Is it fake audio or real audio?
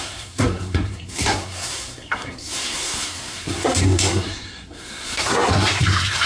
fake